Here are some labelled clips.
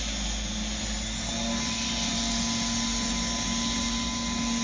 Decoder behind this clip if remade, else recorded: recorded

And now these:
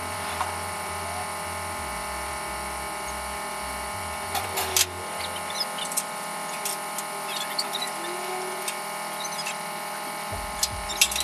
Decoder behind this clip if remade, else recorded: recorded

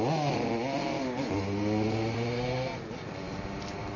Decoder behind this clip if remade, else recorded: recorded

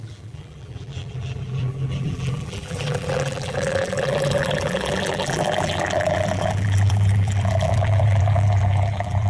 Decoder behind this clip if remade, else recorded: remade, vocoder, BigVGAN v2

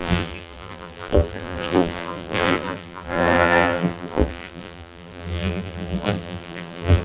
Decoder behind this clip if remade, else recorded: remade, vocoder, BigVGAN v2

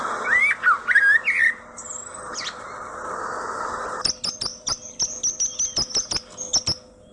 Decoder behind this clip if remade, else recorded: recorded